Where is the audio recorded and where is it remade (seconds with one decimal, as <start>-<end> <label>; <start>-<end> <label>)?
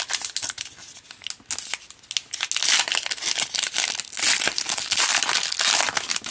0.0-6.3 recorded